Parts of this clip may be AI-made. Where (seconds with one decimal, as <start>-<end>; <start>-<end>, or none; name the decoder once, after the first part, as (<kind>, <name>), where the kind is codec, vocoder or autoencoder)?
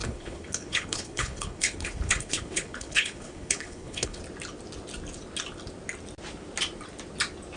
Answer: 0.0-4.2 (codec, HILCodec)